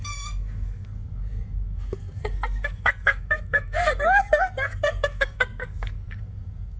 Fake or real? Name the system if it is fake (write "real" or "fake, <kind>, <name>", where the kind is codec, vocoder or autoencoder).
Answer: fake, codec, SNAC